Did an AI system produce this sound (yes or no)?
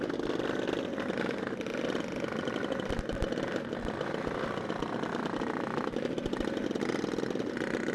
no